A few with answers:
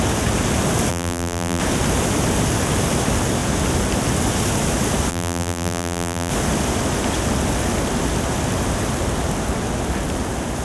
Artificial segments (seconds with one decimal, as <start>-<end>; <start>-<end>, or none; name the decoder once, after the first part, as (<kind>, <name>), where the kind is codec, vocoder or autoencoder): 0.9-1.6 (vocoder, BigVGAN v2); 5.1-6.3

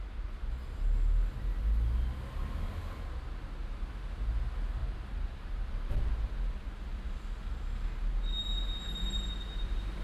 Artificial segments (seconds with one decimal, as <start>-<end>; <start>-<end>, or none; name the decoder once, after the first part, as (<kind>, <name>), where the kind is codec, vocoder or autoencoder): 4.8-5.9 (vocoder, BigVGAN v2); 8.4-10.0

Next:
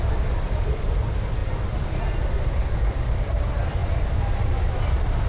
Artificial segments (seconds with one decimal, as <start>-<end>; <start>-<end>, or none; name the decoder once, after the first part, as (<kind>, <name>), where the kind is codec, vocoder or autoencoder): 0.0-3.8 (vocoder, BigVGAN v2); 4.5-5.3

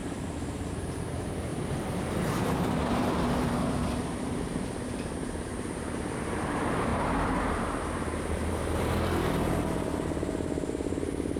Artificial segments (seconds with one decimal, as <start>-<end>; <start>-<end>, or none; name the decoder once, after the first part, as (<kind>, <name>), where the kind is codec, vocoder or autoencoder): 0.0-1.5 (vocoder, BigVGAN v2); 2.4-5.5; 6.2-11.4

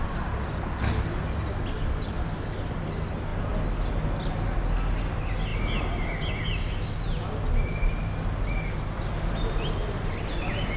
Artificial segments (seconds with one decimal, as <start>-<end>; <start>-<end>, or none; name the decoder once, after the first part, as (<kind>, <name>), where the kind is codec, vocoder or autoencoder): none

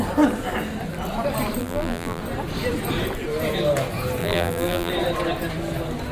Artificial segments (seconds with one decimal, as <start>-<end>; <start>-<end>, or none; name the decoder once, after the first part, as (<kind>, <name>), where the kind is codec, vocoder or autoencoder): 1.6-2.2 (vocoder, BigVGAN v2); 4.2-4.9

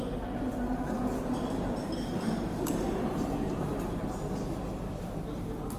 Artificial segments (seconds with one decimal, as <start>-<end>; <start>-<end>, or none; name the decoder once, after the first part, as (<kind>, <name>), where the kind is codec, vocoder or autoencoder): 0.5-4.0 (vocoder, BigVGAN v2)